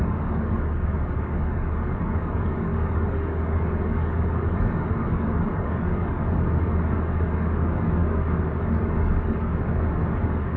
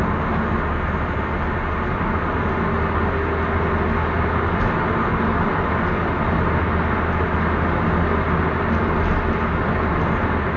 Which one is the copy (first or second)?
first